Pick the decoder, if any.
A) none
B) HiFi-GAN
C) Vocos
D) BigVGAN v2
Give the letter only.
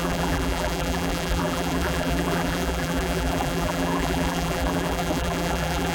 D